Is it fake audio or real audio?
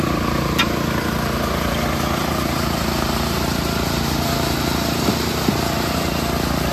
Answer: fake